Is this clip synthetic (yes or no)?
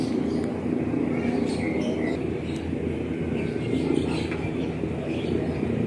no